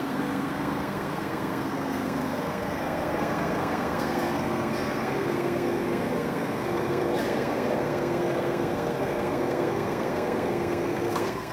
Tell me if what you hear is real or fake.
fake